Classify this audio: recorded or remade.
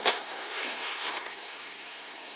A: remade